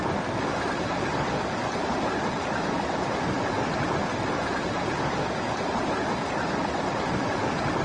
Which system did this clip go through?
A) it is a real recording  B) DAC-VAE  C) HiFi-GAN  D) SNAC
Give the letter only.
A